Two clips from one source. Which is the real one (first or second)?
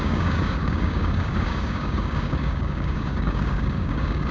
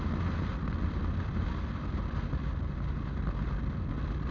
second